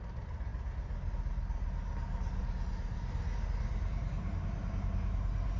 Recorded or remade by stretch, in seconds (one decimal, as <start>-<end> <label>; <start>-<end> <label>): 0.0-5.6 recorded